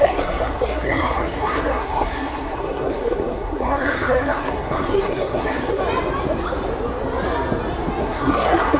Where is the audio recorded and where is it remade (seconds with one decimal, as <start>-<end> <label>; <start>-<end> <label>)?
0.0-5.8 remade; 5.8-8.0 recorded; 8.0-8.8 remade